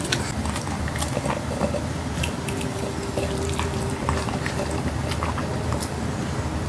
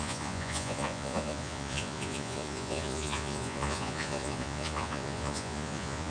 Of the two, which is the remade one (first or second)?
second